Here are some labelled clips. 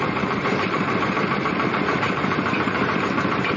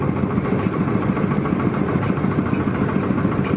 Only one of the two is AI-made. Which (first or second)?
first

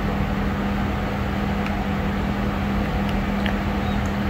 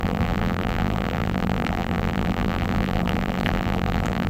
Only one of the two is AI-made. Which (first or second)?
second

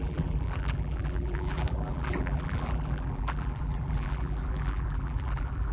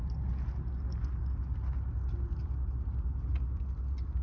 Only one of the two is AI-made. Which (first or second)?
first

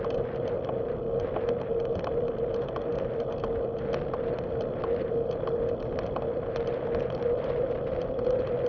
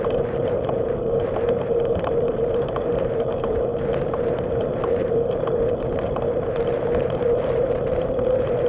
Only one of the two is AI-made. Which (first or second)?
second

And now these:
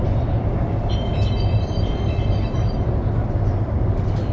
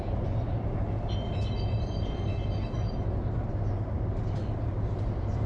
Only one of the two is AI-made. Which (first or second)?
first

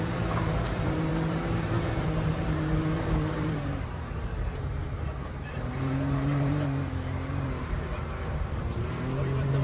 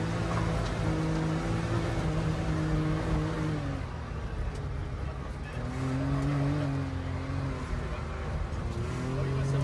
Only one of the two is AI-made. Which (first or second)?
first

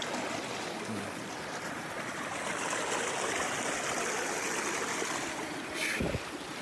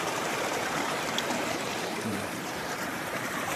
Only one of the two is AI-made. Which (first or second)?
second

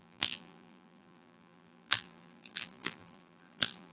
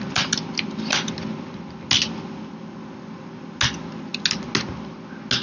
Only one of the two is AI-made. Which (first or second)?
first